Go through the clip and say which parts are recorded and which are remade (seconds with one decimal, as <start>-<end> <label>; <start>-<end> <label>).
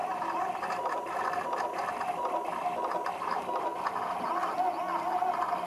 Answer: 0.0-1.2 remade; 1.2-5.7 recorded